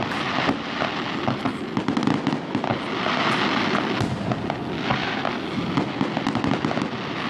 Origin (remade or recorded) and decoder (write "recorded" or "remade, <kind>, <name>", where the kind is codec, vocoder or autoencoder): recorded